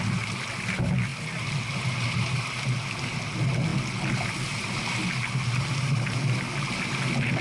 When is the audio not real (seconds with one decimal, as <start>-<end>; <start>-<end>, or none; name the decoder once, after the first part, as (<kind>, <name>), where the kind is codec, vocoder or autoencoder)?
none